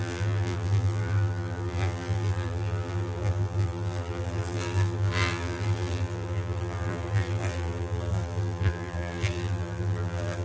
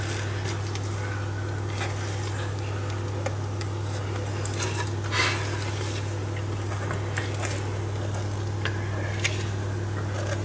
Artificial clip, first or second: first